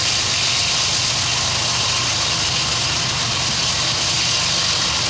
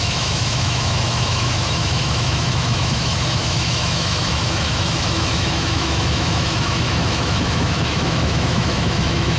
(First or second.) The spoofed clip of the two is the second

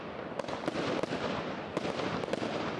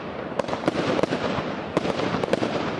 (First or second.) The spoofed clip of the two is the second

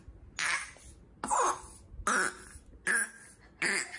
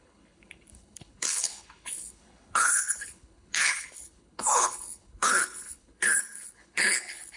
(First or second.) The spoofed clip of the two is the second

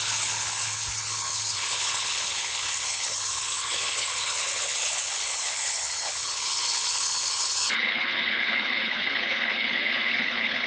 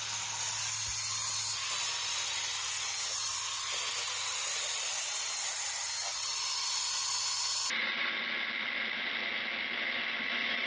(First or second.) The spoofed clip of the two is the first